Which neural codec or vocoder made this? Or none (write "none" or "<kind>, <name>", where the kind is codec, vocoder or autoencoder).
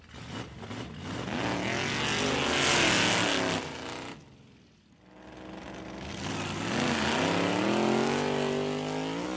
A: none